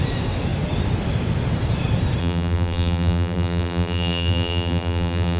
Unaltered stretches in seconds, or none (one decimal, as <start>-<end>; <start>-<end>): 0.0-2.2